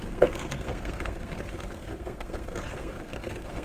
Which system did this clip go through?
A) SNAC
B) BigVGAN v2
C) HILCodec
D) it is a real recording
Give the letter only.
A